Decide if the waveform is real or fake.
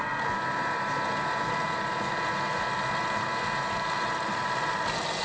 real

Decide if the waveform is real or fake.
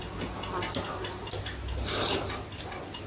real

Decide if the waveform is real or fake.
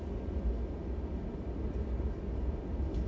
real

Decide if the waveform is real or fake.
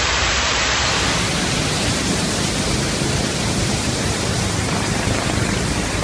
fake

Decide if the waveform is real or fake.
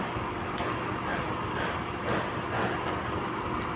real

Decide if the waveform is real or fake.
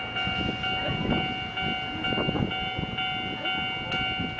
real